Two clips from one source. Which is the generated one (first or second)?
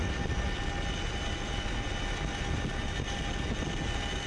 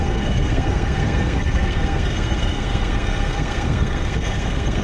second